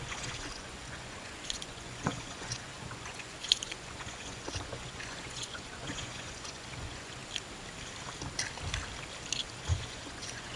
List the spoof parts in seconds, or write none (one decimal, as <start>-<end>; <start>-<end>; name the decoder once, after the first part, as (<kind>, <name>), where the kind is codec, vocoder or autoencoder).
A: 0.0-7.2 (vocoder, Vocos); 9.6-10.6